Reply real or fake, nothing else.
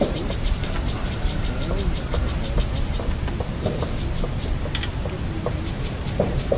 real